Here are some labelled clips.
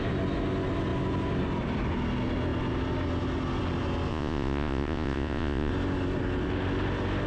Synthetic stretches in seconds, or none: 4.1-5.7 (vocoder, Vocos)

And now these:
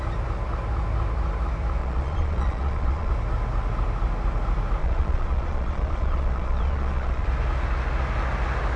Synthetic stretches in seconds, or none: 1.8-3.1 (vocoder, Vocos); 4.8-7.3

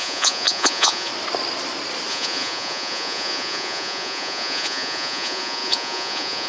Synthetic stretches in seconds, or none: 0.0-1.1 (vocoder, Vocos); 2.1-6.5

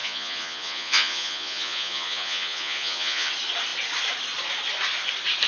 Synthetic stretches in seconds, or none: 0.0-3.3 (vocoder, Vocos)

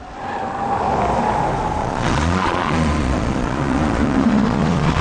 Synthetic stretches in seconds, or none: 1.8-5.0 (vocoder, Vocos)

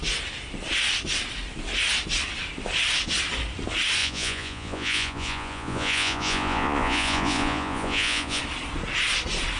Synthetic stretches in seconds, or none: 4.0-8.4 (vocoder, Vocos)